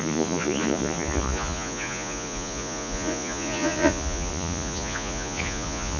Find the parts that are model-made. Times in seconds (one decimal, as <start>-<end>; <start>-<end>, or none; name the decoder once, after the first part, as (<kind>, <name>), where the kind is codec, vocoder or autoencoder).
0.0-6.0 (vocoder, Vocos)